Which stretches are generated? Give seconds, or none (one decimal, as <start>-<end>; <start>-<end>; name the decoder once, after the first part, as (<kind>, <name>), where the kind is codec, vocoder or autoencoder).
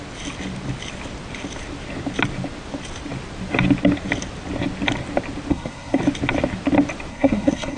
5.5-6.0 (codec, SNAC); 7.1-7.8